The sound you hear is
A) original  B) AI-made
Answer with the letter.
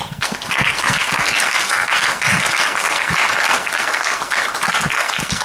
B